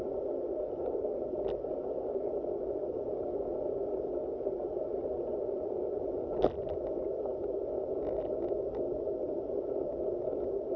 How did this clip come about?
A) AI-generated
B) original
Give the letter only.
B